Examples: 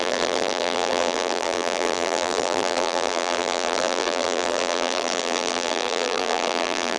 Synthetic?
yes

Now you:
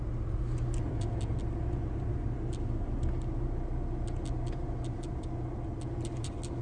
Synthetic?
no